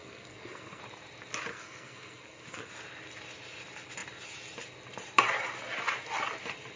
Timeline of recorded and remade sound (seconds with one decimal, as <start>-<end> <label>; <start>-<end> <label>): 0.0-0.8 remade; 0.8-1.5 recorded; 1.5-2.7 remade; 2.7-6.8 recorded